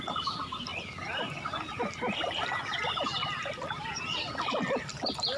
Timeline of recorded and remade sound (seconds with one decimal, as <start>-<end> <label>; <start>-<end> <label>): 0.0-5.4 recorded